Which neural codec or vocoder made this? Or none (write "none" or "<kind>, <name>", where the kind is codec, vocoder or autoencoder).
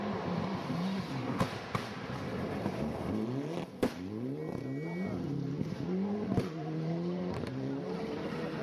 none